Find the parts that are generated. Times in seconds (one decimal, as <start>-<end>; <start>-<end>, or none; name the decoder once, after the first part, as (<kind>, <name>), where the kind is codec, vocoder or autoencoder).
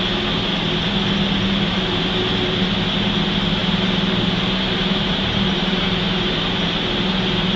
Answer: 3.6-6.9 (vocoder, BigVGAN v2)